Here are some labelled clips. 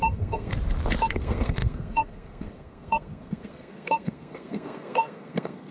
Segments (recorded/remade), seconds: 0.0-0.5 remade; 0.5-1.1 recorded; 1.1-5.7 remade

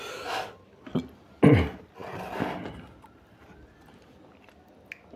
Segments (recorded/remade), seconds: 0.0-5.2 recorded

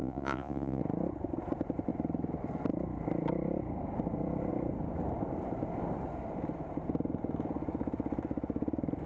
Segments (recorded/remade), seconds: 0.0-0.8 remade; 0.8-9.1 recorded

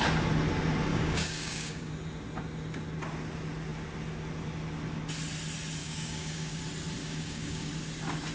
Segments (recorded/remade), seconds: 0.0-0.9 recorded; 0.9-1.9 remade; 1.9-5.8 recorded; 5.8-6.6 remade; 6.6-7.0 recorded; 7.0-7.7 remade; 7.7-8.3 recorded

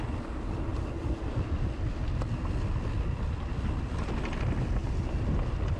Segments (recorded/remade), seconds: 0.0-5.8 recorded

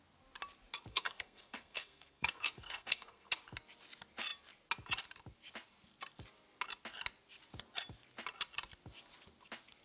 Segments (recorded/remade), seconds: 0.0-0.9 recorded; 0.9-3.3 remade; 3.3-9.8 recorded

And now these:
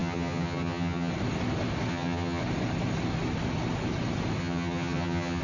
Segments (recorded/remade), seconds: 0.0-1.1 remade; 1.1-1.9 recorded; 1.9-2.4 remade; 2.4-4.4 recorded; 4.4-5.4 remade

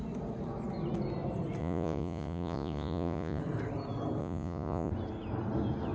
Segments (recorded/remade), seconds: 0.0-1.6 recorded; 1.6-3.4 remade; 3.4-4.2 recorded; 4.2-4.9 remade; 4.9-5.9 recorded